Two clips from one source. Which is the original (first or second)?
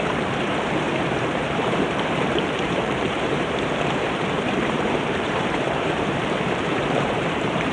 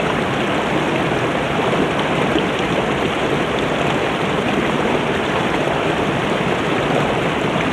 second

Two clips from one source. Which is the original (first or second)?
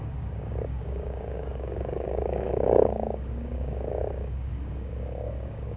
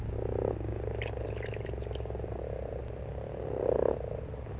second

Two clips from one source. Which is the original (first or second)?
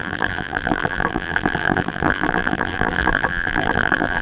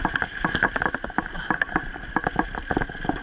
second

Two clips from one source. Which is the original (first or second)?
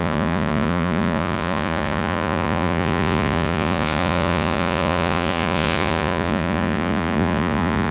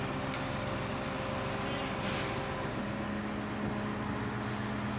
second